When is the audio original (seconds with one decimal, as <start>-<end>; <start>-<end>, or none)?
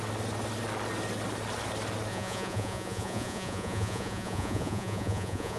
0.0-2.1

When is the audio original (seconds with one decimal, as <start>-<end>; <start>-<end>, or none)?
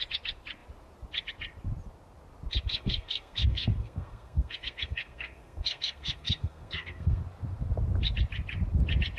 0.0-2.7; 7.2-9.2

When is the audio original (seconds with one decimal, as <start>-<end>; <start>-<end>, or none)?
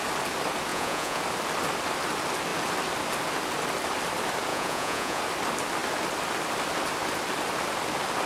0.0-0.7; 1.2-4.5; 5.2-8.3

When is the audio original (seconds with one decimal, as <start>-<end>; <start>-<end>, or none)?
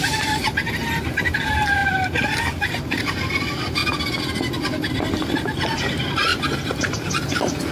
0.6-1.1; 3.8-4.9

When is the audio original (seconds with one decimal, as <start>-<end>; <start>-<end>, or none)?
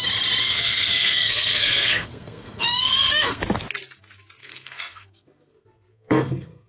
0.0-0.4; 3.4-4.4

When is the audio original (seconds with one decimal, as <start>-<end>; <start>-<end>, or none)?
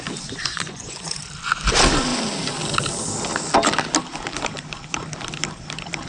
0.0-0.4; 1.2-6.1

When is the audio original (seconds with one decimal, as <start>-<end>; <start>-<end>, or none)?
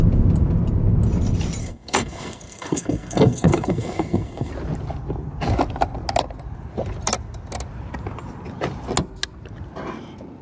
0.0-1.6; 4.5-10.4